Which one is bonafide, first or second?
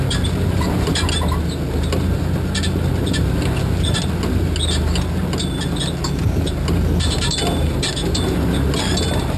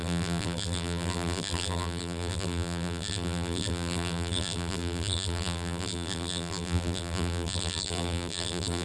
first